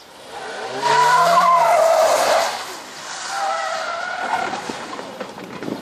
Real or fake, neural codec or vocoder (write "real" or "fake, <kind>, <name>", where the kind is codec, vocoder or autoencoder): real